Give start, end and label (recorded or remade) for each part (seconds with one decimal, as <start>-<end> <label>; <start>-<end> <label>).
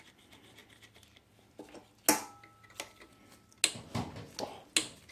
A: 0.0-5.1 recorded